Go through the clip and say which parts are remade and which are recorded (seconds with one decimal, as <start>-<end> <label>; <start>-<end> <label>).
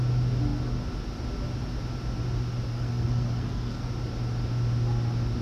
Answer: 0.0-2.7 recorded; 2.7-3.9 remade; 3.9-5.4 recorded